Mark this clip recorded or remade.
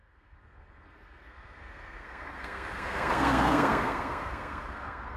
remade